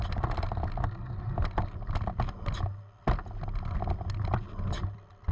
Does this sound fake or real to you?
real